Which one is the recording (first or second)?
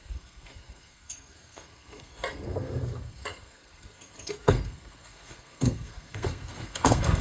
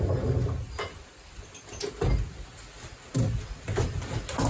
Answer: second